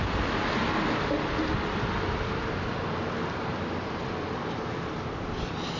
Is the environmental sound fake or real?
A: real